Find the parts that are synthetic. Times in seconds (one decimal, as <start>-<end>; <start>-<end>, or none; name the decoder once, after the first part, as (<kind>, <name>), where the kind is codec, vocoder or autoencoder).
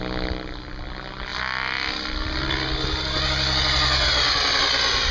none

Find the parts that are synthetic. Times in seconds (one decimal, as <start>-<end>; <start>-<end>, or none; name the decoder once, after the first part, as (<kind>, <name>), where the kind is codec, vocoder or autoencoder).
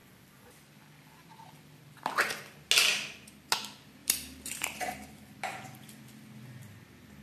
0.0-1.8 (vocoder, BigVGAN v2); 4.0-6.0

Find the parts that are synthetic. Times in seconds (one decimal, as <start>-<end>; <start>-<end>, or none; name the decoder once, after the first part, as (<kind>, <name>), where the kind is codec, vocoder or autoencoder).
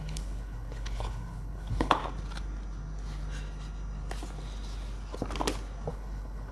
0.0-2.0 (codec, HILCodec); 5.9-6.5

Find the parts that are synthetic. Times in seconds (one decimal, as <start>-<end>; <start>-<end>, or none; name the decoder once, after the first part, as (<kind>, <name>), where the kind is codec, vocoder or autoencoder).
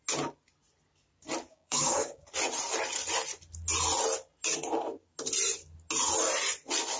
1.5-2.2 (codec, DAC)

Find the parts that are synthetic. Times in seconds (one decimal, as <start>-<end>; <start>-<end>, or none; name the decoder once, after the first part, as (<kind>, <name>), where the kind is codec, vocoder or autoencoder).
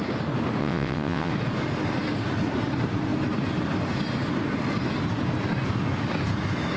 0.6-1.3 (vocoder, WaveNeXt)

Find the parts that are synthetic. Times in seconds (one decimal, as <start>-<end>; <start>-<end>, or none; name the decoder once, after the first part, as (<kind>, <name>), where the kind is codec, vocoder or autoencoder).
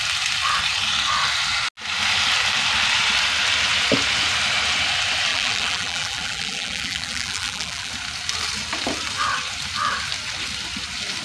5.3-7.9 (vocoder, BigVGAN v2)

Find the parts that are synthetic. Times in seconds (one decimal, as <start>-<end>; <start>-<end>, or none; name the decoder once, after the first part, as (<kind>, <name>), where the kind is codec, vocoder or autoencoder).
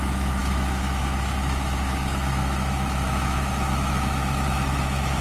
0.0-5.2 (autoencoder, DAC-VAE)